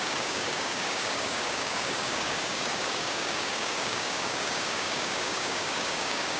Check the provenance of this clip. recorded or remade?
remade